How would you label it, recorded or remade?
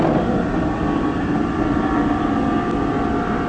recorded